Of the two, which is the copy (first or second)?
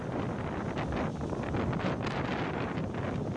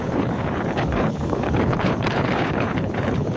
second